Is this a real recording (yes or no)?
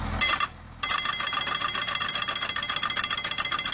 yes